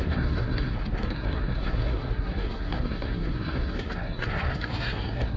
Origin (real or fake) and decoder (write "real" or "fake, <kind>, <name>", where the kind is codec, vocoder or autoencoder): fake, codec, SNAC